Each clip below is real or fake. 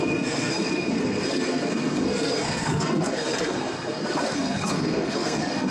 fake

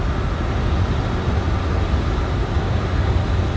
real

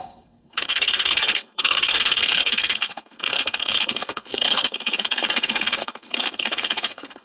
fake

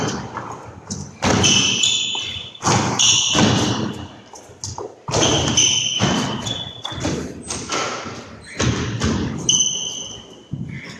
real